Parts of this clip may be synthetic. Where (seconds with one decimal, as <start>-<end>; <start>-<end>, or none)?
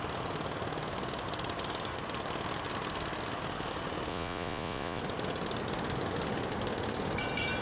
4.1-5.0